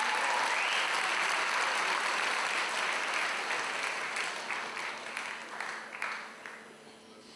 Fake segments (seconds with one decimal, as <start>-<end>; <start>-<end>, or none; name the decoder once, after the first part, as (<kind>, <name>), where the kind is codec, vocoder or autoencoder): none